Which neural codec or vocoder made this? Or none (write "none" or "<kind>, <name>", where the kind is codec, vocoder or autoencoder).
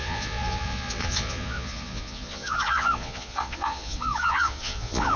vocoder, Vocos